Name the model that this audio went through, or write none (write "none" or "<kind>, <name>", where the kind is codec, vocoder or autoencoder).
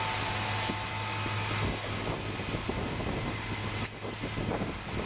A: none